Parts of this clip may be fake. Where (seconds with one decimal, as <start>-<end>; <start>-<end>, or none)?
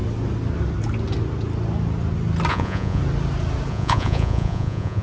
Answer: 2.5-3.0; 3.7-5.0